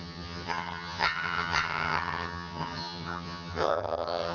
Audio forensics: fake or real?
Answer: fake